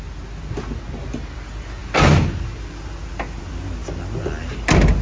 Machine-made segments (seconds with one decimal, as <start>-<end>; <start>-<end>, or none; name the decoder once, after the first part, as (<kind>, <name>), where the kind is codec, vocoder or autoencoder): none